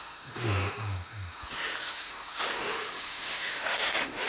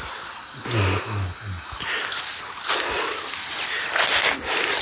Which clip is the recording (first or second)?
second